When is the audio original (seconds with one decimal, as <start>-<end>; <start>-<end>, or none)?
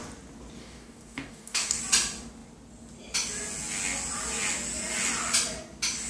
0.0-0.6; 1.8-6.1